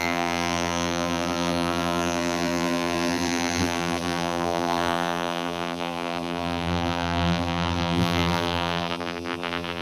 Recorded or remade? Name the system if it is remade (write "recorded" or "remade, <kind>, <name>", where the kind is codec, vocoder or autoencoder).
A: remade, vocoder, BigVGAN v2